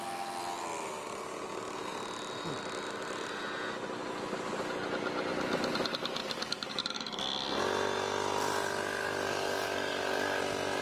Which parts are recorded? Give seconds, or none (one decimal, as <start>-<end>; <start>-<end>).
0.0-6.2; 7.2-9.0; 10.4-10.8